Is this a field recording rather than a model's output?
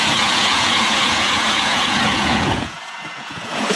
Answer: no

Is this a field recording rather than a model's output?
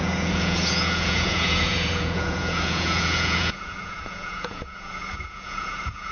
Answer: no